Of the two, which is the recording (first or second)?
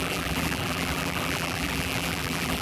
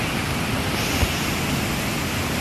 second